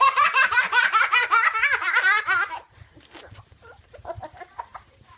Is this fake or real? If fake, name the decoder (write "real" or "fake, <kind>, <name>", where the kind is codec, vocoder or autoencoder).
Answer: fake, vocoder, BigVGAN v2